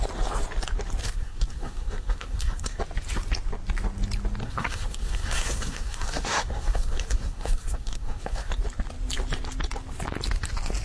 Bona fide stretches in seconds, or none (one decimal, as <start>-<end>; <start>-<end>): 0.0-1.0; 2.8-4.4; 8.5-10.8